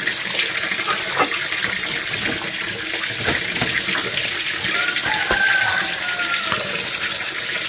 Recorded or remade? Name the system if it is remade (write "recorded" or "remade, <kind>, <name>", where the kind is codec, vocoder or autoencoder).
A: recorded